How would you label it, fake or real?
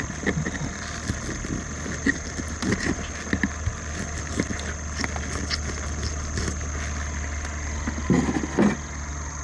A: real